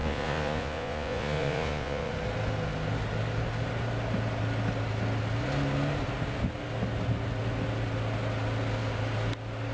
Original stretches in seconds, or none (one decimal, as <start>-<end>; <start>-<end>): 2.1-9.7